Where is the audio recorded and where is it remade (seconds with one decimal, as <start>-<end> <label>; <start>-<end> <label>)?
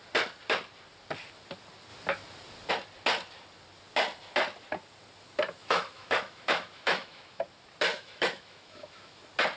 0.0-5.6 recorded; 5.6-7.4 remade; 7.4-7.9 recorded; 7.9-9.2 remade; 9.2-9.6 recorded